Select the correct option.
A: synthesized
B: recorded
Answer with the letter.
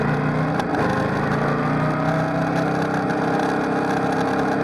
B